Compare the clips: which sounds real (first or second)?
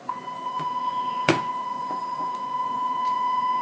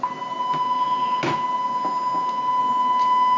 second